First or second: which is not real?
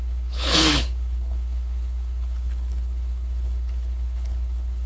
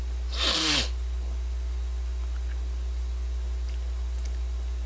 first